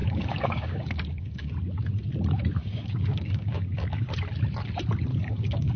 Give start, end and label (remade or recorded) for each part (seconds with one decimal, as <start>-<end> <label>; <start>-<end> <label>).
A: 0.0-1.5 remade; 1.5-2.6 recorded; 2.6-4.1 remade; 4.1-5.1 recorded; 5.1-5.8 remade